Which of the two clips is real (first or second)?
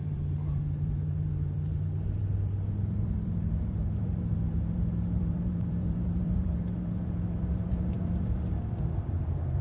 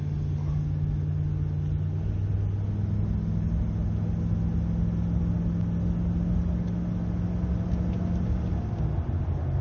second